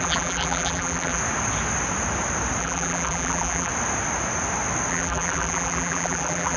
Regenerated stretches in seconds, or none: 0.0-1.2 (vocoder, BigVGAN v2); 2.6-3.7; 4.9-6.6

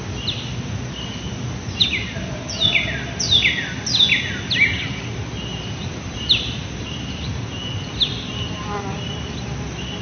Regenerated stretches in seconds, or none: 5.5-7.4 (vocoder, BigVGAN v2)